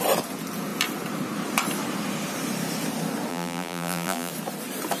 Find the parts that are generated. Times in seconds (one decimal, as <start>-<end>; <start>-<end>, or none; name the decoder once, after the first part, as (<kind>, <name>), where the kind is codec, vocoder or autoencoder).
3.3-4.3 (vocoder, BigVGAN v2)